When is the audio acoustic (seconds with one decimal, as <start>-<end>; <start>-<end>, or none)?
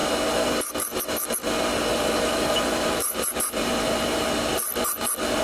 0.0-1.9; 4.3-5.4